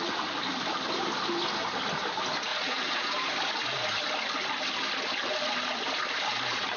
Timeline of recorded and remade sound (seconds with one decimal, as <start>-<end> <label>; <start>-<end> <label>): 0.0-2.5 recorded; 2.5-3.3 remade; 3.3-6.8 recorded